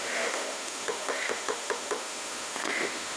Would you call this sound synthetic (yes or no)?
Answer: yes